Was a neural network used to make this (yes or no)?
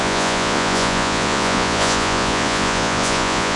yes